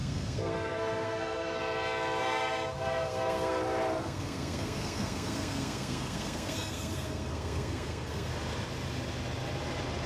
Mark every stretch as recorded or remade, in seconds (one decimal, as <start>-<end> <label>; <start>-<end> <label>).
0.0-1.6 remade; 1.6-2.2 recorded; 2.2-3.6 remade; 3.6-4.0 recorded; 4.0-8.3 remade; 8.3-10.1 recorded